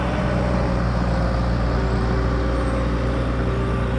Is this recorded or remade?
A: recorded